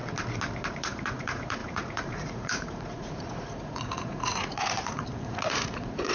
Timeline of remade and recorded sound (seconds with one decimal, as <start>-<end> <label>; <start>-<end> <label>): 0.0-0.7 recorded; 0.7-6.1 remade